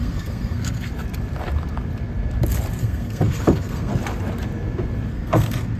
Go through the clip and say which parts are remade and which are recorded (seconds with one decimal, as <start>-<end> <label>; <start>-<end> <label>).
0.0-0.9 remade; 0.9-2.8 recorded; 2.8-3.9 remade; 3.9-5.1 recorded; 5.1-5.8 remade